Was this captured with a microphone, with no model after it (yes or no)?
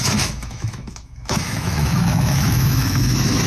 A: no